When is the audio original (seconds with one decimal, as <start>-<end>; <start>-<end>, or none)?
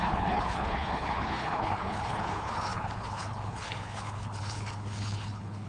none